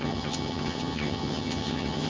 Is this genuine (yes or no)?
no